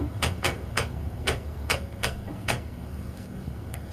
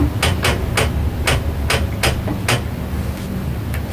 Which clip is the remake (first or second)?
first